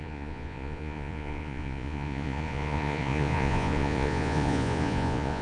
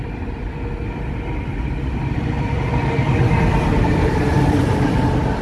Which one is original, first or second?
second